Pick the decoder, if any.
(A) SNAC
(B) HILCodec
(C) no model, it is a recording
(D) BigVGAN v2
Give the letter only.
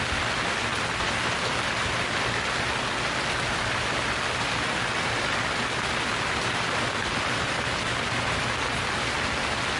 C